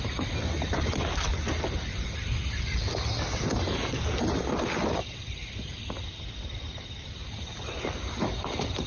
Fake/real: real